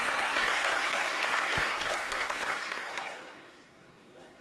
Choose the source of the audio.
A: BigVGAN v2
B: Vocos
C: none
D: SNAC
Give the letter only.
D